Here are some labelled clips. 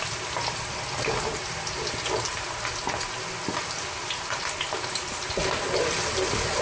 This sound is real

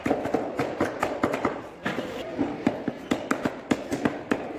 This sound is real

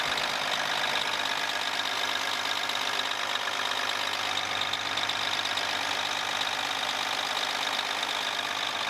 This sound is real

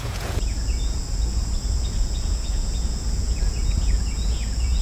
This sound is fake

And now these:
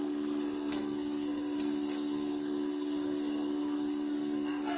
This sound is fake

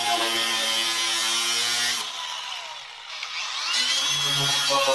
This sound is real